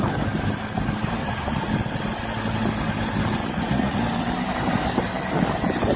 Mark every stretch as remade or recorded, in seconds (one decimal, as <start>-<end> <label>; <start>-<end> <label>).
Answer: 0.0-1.2 recorded; 1.2-1.7 remade; 1.7-3.4 recorded; 3.4-4.0 remade; 4.0-6.0 recorded